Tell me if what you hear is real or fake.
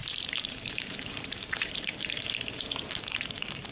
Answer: fake